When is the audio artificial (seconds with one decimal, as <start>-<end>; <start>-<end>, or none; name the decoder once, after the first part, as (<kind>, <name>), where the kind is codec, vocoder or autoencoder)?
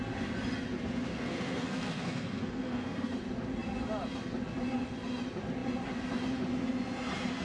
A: 1.1-3.1 (codec, SNAC)